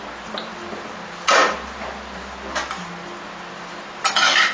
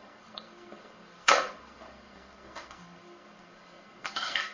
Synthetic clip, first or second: second